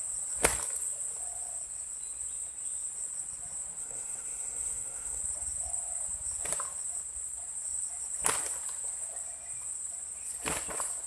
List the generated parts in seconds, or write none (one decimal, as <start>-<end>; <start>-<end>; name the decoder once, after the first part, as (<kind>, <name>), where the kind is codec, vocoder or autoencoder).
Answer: 3.8-5.2 (codec, SNAC)